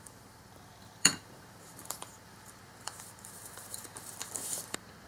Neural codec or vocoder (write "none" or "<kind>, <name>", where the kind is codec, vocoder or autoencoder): vocoder, BigVGAN v2